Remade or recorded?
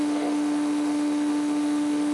remade